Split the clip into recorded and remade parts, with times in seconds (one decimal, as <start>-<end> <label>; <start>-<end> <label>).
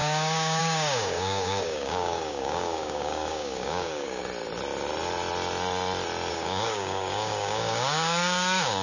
0.0-4.2 remade; 4.2-6.3 recorded; 6.3-8.8 remade